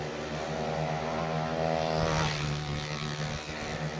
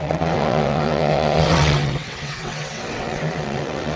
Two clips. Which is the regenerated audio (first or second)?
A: second